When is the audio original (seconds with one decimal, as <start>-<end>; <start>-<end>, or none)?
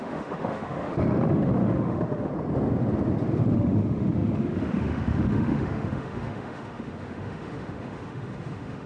2.3-3.5